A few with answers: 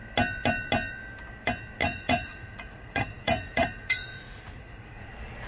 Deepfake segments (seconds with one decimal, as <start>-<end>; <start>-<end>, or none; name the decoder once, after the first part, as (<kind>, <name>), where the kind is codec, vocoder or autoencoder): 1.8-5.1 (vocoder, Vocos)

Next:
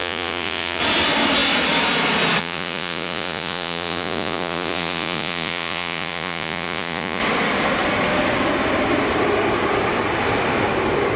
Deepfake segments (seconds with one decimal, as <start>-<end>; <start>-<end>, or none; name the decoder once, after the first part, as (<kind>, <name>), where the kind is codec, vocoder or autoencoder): 0.0-0.8 (vocoder, Vocos); 2.4-7.2

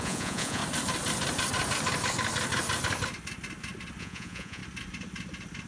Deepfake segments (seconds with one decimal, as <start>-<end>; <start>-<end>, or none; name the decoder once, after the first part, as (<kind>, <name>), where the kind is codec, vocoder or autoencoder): 0.0-0.6 (vocoder, Vocos); 4.0-4.6

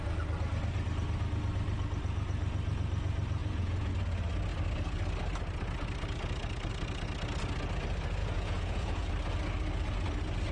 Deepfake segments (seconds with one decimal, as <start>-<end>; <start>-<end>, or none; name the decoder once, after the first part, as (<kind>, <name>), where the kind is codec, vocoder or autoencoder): 3.4-3.9 (vocoder, Vocos); 8.2-9.1

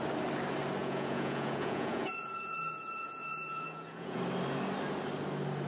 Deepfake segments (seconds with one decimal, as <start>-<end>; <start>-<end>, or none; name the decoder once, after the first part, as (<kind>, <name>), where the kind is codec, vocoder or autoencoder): 0.8-4.2 (vocoder, Vocos)

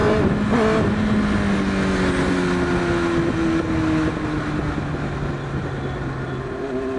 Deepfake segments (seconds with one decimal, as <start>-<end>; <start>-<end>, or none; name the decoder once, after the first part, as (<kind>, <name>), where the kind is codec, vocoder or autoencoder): none

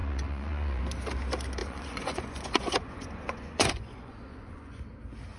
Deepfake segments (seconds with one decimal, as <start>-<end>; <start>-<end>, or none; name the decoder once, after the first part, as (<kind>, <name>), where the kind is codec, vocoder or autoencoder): 0.0-0.8 (vocoder, Vocos); 1.6-4.8